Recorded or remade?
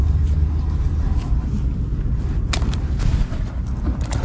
recorded